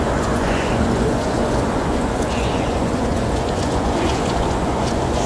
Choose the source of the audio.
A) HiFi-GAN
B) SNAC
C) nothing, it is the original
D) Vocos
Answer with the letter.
D